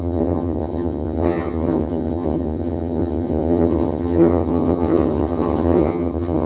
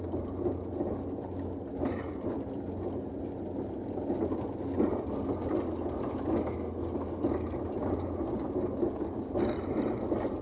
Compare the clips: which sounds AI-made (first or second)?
first